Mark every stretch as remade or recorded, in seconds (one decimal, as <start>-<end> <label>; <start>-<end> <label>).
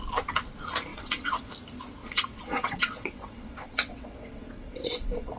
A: 0.0-0.9 recorded; 0.9-1.5 remade; 1.5-2.0 recorded; 2.0-5.4 remade